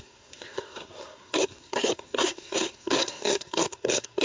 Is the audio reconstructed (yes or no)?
yes